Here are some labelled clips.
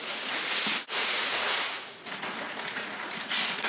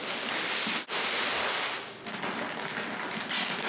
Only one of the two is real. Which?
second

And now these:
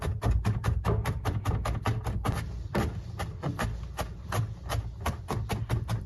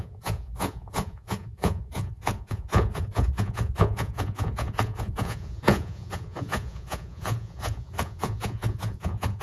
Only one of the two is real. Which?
first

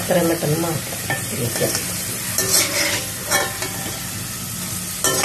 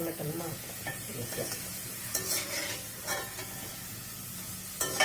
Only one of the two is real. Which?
first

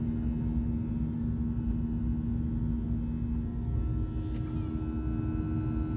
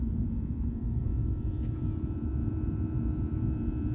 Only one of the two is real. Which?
first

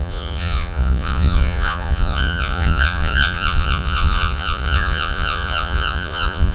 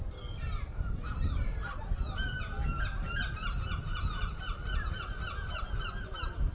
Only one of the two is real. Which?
second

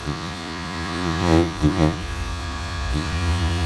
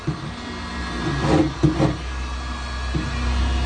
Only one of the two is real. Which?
second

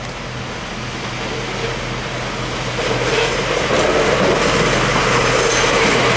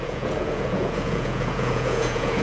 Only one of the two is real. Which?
first